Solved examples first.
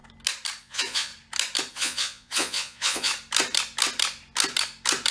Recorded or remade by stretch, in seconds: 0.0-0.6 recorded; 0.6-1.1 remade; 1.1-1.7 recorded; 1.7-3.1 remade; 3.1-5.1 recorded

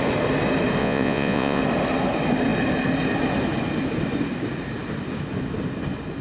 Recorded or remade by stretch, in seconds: 0.0-0.8 recorded; 0.8-1.6 remade; 1.6-6.2 recorded

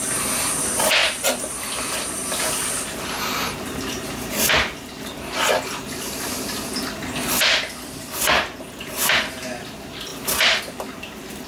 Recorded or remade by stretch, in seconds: 0.0-2.6 recorded; 2.6-4.1 remade; 4.1-11.5 recorded